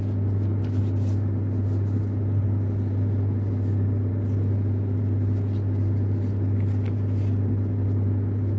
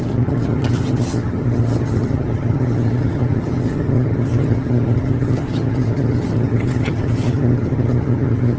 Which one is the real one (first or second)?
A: first